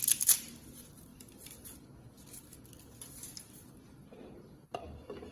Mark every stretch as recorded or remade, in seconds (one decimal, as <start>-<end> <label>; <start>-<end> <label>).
0.0-5.3 recorded